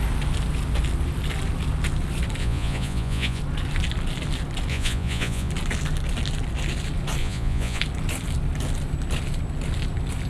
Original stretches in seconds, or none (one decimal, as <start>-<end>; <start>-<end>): 0.0-2.4; 3.4-4.7; 5.5-7.2; 7.8-10.3